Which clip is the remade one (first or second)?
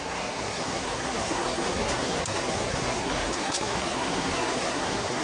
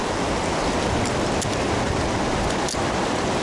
first